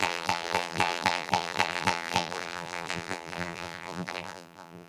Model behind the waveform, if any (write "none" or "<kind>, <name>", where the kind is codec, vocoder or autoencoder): vocoder, BigVGAN v2